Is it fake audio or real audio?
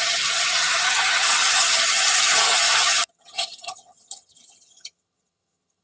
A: fake